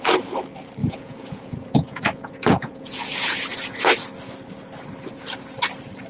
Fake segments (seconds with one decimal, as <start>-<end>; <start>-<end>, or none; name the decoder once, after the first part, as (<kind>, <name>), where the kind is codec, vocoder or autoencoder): 0.8-3.9 (vocoder, Vocos)